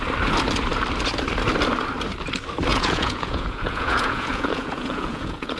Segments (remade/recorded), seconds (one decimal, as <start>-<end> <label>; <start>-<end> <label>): 0.0-2.7 recorded; 2.7-5.6 remade